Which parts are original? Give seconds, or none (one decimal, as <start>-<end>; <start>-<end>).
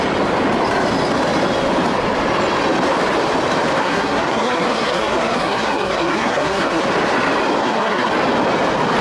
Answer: 0.0-3.8; 6.8-7.6; 8.1-9.0